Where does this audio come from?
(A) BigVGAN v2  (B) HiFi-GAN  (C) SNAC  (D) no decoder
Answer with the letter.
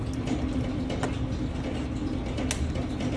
D